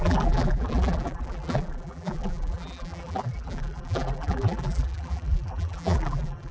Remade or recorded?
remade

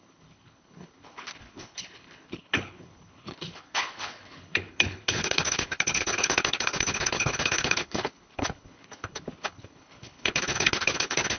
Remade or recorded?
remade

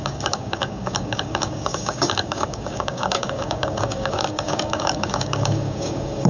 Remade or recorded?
remade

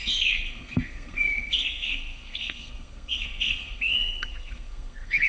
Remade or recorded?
remade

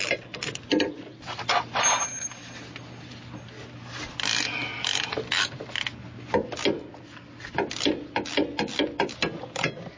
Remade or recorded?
recorded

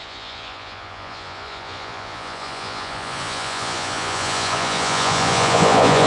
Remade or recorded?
remade